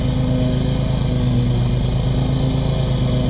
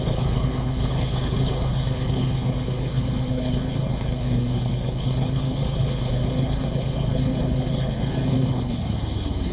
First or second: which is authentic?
first